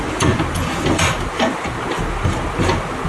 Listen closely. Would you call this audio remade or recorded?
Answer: recorded